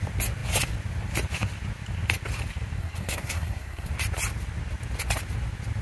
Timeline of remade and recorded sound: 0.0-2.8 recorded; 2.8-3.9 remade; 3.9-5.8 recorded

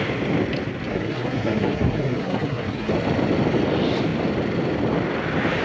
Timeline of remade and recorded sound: 0.0-0.9 recorded; 0.9-2.9 remade; 2.9-5.6 recorded

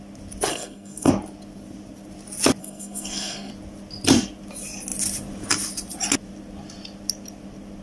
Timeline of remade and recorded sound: 0.0-0.5 recorded; 0.5-1.1 remade; 1.1-2.6 recorded; 2.6-3.5 remade; 3.5-7.8 recorded

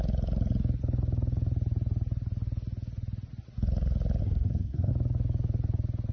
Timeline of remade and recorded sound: 0.0-4.2 recorded; 4.2-4.9 remade; 4.9-6.1 recorded

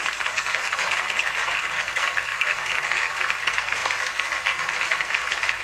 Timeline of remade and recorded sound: 0.0-5.6 remade